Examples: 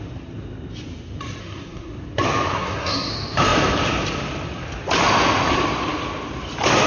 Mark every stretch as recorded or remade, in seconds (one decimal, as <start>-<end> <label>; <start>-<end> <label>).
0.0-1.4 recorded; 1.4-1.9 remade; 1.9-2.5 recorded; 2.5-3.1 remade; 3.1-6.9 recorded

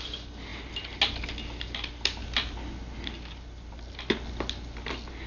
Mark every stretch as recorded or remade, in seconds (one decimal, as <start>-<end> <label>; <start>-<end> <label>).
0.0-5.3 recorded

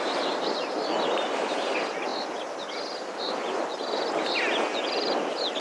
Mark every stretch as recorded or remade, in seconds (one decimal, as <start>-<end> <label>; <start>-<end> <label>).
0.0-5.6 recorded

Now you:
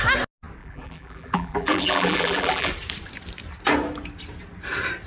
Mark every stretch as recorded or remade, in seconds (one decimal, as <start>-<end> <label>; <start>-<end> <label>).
0.0-0.6 recorded; 0.6-2.7 remade; 2.7-5.1 recorded

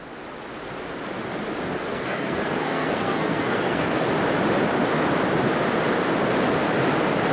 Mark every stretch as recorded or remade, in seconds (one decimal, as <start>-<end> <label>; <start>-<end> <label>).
0.0-1.9 recorded; 1.9-4.1 remade; 4.1-7.3 recorded

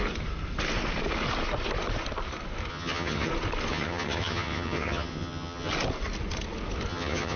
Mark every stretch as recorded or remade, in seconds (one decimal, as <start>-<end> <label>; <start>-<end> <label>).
0.0-2.7 recorded; 2.7-3.3 remade; 3.3-3.7 recorded; 3.7-5.7 remade; 5.7-6.9 recorded; 6.9-7.4 remade

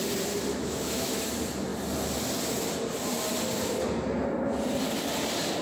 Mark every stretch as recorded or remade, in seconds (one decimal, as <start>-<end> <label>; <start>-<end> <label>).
0.0-0.5 recorded; 0.5-1.2 remade; 1.2-5.6 recorded

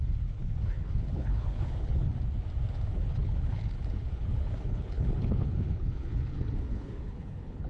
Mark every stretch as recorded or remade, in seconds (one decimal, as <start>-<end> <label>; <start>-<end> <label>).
0.0-2.1 remade; 2.1-2.7 recorded; 2.7-7.7 remade